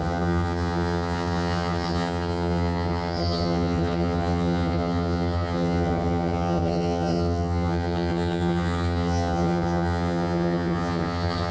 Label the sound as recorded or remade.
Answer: remade